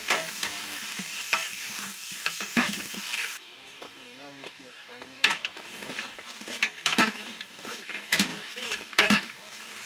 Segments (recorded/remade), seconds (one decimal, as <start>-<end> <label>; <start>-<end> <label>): 0.0-9.9 remade